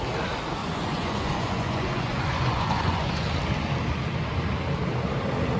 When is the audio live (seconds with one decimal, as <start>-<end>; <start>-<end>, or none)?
0.0-0.6; 3.1-5.6